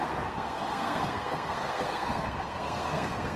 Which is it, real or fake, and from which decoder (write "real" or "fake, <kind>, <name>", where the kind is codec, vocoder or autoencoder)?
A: fake, codec, SNAC